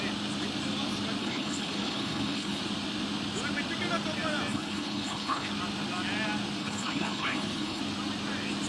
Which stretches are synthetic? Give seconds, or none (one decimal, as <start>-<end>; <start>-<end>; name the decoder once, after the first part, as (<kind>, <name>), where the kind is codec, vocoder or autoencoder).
1.2-2.6 (codec, HILCodec); 4.5-5.5; 6.6-7.8